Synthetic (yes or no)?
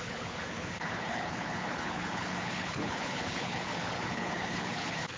yes